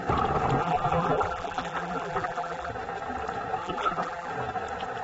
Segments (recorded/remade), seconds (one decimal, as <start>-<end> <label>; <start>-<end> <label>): 0.0-0.6 recorded; 0.6-2.7 remade; 2.7-3.6 recorded; 3.6-4.3 remade; 4.3-5.0 recorded